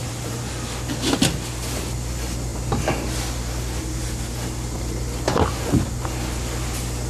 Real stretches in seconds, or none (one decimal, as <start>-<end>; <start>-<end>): 0.5-7.1